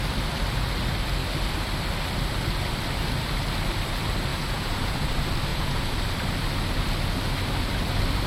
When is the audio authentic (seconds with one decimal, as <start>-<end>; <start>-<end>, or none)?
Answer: 0.0-4.3; 5.1-5.5; 6.0-8.3